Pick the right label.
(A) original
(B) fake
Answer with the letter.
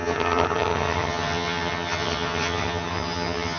B